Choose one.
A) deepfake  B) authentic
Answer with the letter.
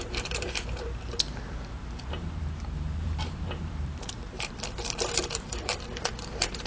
A